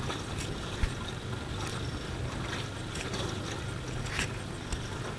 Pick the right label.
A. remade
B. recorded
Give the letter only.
B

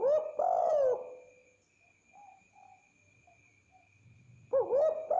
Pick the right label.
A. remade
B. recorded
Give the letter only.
B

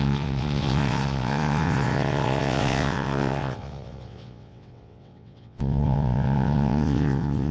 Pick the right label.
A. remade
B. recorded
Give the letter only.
A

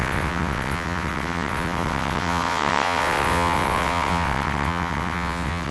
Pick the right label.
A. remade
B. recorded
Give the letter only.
A